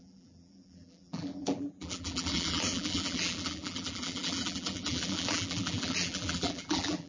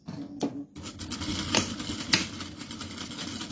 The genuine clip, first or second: second